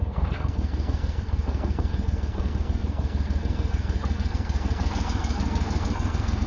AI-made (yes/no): yes